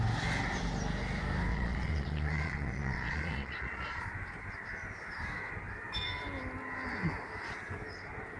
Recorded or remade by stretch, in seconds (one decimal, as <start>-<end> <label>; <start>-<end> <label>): 0.0-1.5 recorded; 1.5-4.0 remade; 4.0-8.4 recorded